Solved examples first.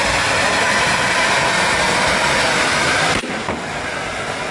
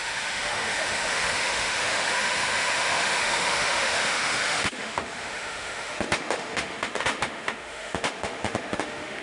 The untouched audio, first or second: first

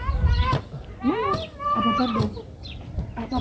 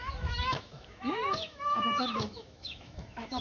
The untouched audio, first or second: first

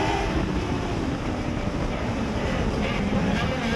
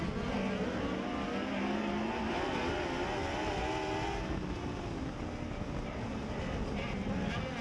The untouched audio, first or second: second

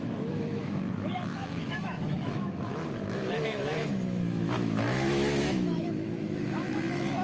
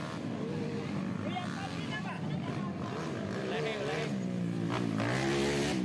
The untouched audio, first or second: second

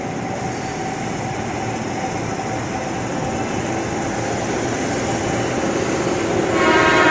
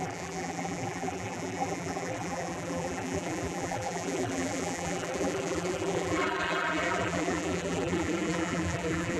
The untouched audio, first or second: first